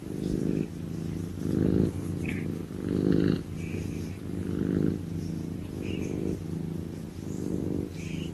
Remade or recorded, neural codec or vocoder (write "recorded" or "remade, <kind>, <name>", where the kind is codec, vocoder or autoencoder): recorded